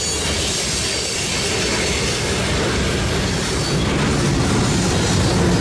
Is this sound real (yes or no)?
yes